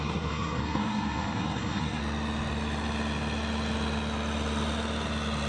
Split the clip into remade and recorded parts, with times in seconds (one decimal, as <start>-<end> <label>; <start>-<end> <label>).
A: 0.0-2.0 remade; 2.0-5.5 recorded